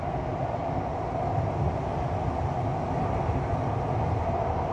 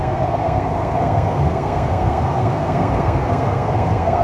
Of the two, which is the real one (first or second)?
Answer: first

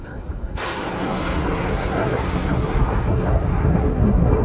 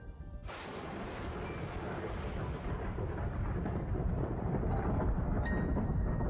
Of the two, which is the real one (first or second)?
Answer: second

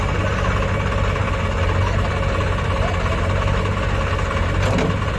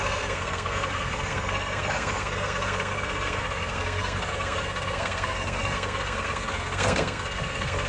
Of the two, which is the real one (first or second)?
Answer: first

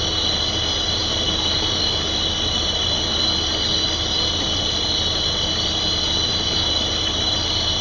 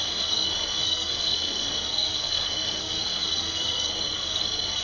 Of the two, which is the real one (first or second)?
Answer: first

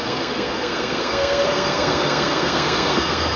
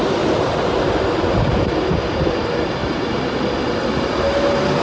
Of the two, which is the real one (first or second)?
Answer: second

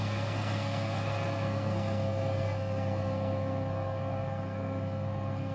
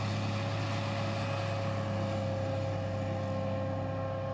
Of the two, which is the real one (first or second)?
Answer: second